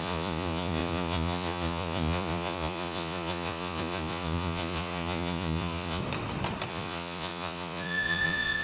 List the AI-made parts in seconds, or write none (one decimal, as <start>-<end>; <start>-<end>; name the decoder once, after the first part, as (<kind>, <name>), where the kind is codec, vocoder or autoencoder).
0.0-6.0 (vocoder, Vocos); 6.7-8.6